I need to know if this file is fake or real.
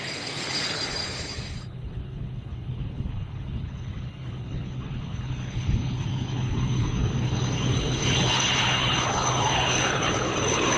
fake